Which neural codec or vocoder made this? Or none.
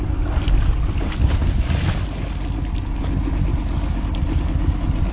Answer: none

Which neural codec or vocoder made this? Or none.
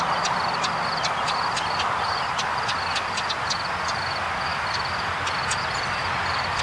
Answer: none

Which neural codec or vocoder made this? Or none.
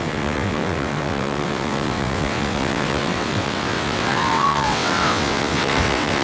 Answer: vocoder, WaveNeXt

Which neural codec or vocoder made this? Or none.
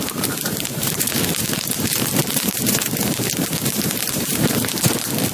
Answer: vocoder, BigVGAN v2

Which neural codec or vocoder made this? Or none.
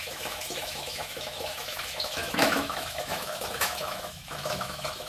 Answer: autoencoder, DAC-VAE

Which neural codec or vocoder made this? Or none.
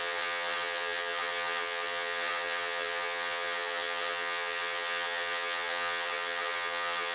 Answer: vocoder, HiFi-GAN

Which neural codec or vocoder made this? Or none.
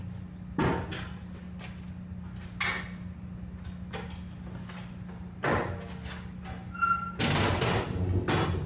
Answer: none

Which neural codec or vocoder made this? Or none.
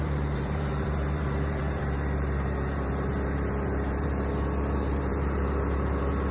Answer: vocoder, BigVGAN v2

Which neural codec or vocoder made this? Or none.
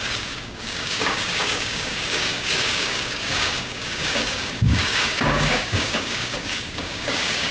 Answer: codec, DAC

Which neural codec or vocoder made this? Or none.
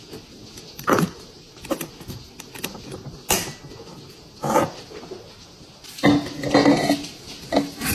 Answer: none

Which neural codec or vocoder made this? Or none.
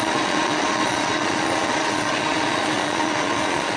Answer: vocoder, Vocos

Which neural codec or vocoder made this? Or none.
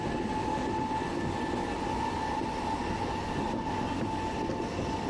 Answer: none